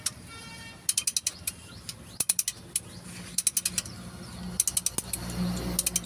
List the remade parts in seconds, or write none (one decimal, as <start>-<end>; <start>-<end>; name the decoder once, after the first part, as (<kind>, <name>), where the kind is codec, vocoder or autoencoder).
none